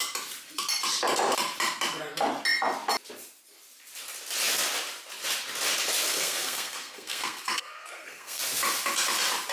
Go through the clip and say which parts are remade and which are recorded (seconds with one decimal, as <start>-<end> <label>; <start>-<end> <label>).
0.0-6.1 recorded; 6.1-8.4 remade; 8.4-9.5 recorded